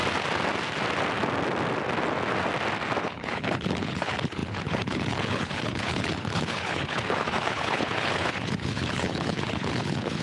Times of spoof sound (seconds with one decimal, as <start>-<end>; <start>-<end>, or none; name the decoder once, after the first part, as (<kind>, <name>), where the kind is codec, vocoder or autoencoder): 3.0-10.2 (codec, HILCodec)